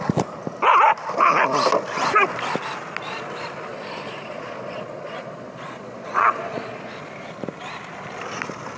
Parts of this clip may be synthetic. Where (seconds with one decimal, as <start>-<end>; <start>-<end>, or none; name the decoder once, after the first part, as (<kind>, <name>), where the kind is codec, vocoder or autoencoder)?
3.7-7.3 (vocoder, Vocos)

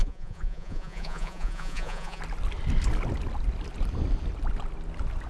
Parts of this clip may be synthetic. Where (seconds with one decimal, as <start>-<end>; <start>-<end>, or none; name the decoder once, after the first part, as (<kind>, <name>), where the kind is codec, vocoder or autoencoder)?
0.0-2.2 (vocoder, Vocos)

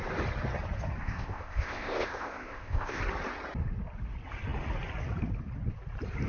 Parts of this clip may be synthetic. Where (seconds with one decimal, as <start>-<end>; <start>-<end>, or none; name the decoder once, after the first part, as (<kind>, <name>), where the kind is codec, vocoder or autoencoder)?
1.0-3.0 (codec, ZipCodec)

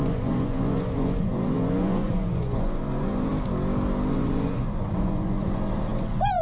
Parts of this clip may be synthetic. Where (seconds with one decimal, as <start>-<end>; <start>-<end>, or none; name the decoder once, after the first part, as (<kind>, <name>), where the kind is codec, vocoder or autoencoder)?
0.0-3.3 (vocoder, Vocos); 4.1-6.4

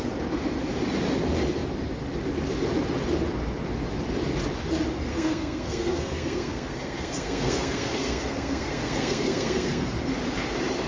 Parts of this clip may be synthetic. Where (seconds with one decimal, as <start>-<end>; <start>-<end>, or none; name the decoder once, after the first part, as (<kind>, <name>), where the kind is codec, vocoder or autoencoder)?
5.1-10.0 (codec, SNAC)